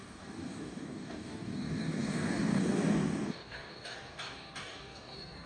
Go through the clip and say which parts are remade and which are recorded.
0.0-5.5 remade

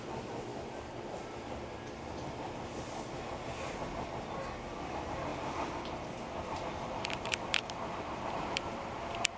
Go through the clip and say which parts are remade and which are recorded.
0.0-9.4 recorded

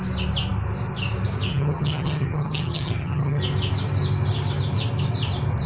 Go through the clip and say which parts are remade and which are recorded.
0.0-1.5 recorded; 1.5-3.4 remade; 3.4-5.7 recorded